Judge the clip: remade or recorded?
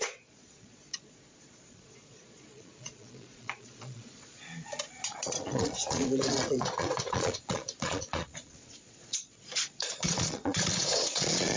remade